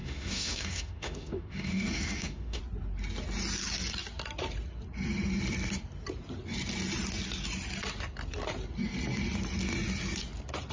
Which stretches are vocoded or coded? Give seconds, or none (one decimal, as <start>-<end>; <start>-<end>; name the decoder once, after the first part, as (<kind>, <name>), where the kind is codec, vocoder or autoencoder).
0.0-2.6 (autoencoder, DAC-VAE)